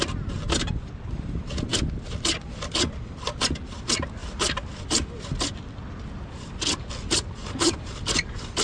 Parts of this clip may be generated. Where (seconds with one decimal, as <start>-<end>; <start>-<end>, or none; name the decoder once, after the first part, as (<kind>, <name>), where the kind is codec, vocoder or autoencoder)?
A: 4.2-5.2 (vocoder, BigVGAN v2); 7.4-8.6